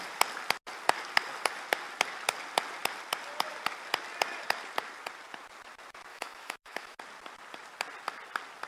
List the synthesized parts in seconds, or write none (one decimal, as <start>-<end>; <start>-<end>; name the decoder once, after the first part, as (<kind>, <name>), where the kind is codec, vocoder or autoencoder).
6.1-7.0 (autoencoder, DAC-VAE)